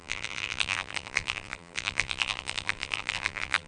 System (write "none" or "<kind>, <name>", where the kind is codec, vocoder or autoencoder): vocoder, BigVGAN v2